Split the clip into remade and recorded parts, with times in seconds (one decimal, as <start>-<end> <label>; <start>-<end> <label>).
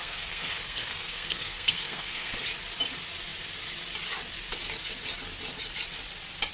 0.0-2.3 remade; 2.3-6.5 recorded